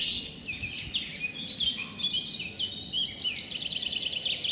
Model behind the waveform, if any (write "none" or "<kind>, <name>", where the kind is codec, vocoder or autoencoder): none